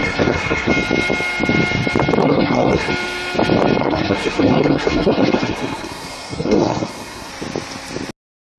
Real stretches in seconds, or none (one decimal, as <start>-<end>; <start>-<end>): 0.7-2.2; 2.9-3.8; 7.3-8.6